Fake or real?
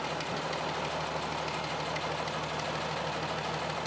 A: real